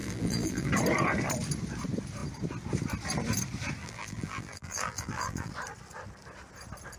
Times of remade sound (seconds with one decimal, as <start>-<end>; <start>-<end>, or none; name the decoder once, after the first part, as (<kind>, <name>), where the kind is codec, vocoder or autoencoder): 0.0-0.7 (vocoder, BigVGAN v2); 3.8-5.5